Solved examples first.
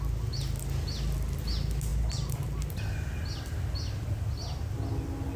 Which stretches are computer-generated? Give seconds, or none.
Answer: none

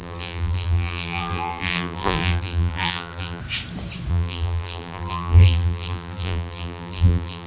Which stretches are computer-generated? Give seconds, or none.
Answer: 0.0-3.4 (vocoder, BigVGAN v2); 4.1-7.5

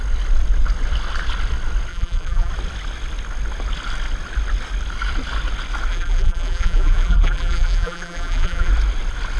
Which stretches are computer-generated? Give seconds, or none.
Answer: 1.9-2.5 (vocoder, BigVGAN v2); 5.9-8.7